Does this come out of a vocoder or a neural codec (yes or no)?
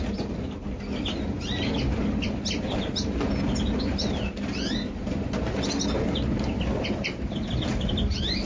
no